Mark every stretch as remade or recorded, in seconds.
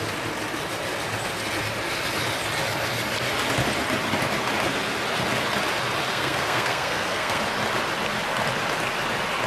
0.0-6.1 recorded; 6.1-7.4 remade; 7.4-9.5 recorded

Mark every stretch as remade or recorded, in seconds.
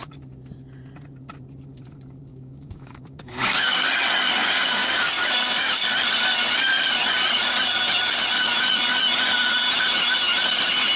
0.0-2.3 recorded; 2.3-3.9 remade; 3.9-4.4 recorded; 4.4-5.9 remade; 5.9-11.0 recorded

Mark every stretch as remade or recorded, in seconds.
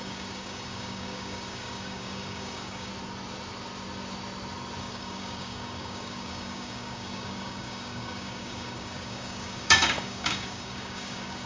0.0-2.9 remade; 2.9-4.8 recorded; 4.8-11.5 remade